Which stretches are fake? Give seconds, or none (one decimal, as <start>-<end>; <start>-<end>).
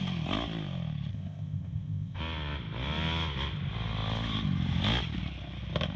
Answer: 1.1-2.2